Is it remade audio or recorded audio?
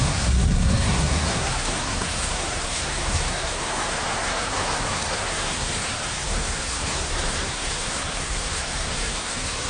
remade